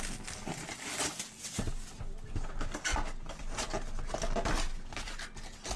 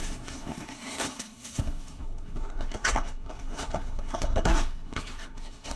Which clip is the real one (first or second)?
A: first